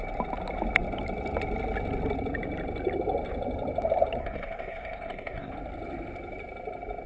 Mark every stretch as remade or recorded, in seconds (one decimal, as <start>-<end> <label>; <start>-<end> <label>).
0.0-4.2 recorded; 4.2-5.5 remade; 5.5-7.1 recorded